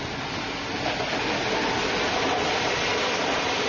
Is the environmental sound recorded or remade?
recorded